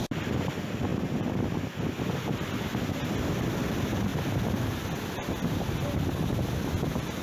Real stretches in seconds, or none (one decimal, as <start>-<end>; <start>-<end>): 0.0-7.2